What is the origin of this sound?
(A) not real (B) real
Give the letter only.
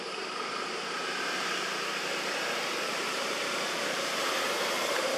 A